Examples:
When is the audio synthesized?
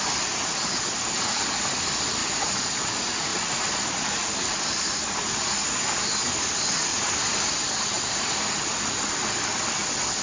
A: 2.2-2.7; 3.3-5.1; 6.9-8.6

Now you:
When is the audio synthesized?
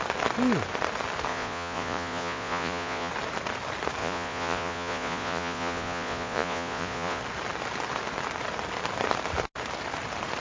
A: 1.3-3.1; 4.0-7.2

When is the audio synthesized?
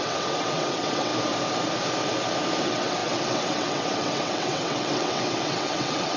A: 0.0-1.1; 2.6-6.2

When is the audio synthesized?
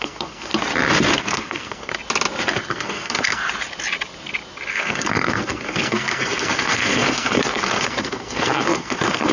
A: 0.0-0.5; 1.2-1.9; 2.7-3.4; 4.7-9.3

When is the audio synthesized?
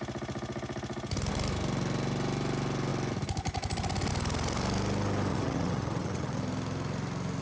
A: 5.3-6.4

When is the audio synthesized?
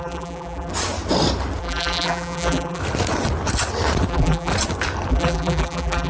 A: 0.0-0.7; 1.6-2.8; 4.1-4.5; 5.1-6.1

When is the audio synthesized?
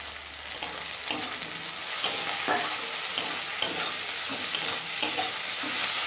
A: none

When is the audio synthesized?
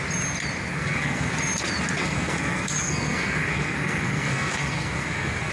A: 0.7-1.3; 2.0-5.5